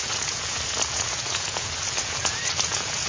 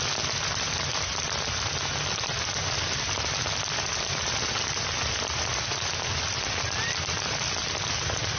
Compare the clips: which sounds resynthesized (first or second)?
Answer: first